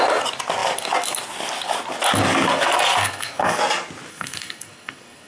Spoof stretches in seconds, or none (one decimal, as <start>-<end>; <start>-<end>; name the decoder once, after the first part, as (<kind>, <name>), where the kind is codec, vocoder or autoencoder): 2.9-3.6 (codec, SNAC); 4.1-5.3